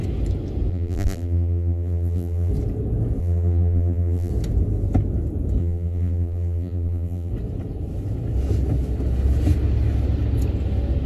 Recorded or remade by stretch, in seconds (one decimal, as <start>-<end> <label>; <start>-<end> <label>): 0.0-0.7 recorded; 0.7-2.5 remade; 2.5-3.2 recorded; 3.2-4.3 remade; 4.3-5.6 recorded; 5.6-7.3 remade; 7.3-11.1 recorded